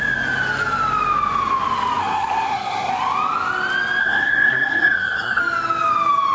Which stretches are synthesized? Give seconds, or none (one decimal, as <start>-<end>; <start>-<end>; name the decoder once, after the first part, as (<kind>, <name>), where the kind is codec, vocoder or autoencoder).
2.0-2.9 (codec, SNAC); 4.0-5.4